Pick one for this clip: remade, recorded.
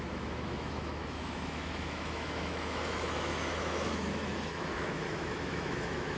remade